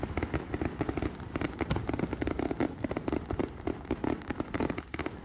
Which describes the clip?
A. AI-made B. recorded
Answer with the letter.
B